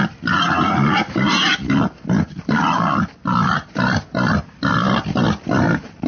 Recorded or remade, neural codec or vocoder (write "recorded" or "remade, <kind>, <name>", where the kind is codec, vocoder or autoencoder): recorded